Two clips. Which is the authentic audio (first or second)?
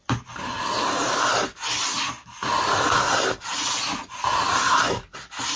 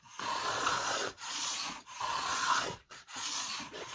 first